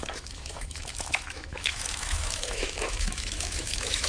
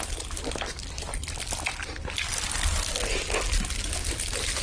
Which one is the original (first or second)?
second